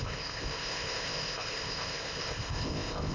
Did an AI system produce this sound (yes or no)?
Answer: yes